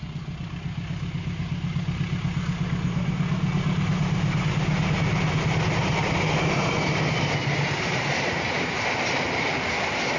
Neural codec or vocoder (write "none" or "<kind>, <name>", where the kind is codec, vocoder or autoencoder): none